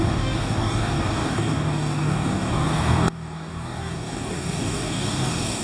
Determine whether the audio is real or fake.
fake